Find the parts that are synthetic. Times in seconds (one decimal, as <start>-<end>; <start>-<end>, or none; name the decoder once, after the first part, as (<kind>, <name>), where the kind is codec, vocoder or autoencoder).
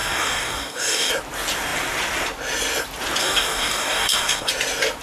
0.0-1.1 (codec, DAC); 3.2-4.5